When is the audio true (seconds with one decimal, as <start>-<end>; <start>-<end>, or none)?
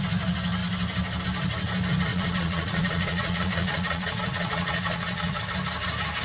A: 0.0-2.1; 5.4-6.2